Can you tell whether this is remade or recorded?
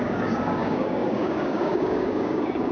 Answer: remade